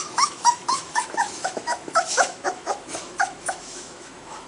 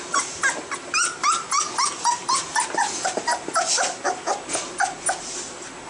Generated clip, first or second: first